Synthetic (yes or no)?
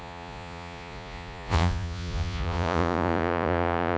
yes